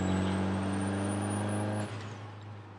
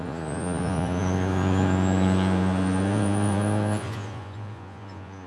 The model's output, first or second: second